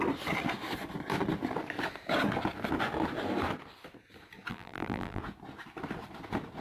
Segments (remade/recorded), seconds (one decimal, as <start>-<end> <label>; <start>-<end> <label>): 0.0-4.5 recorded; 4.5-5.2 remade; 5.2-6.6 recorded